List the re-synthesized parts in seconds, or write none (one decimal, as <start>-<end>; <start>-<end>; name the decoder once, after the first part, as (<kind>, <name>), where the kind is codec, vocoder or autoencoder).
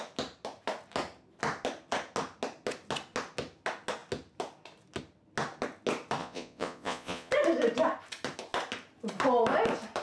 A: 6.2-7.3 (vocoder, Vocos)